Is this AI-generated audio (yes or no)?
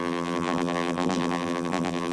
yes